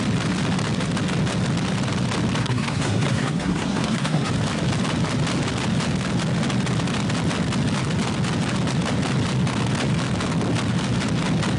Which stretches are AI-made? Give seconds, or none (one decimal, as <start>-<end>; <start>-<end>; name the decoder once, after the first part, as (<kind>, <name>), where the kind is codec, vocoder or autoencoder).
2.4-4.3 (codec, SNAC)